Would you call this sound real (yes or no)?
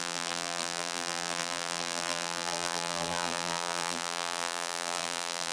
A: no